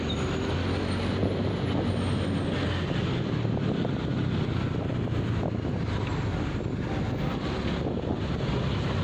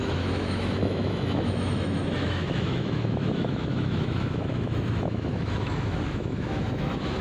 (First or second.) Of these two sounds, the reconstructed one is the second